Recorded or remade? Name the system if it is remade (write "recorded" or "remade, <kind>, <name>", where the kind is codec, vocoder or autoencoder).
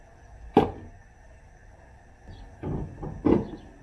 recorded